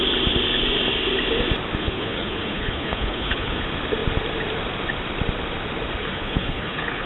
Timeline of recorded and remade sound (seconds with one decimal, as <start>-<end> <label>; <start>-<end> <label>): 0.0-1.8 recorded; 1.8-3.6 remade; 3.6-6.0 recorded; 6.0-7.1 remade